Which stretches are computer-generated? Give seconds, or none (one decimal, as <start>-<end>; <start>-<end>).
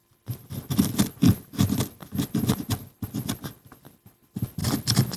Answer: none